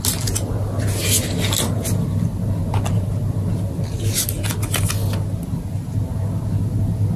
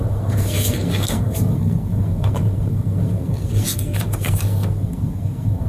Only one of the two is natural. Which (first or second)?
first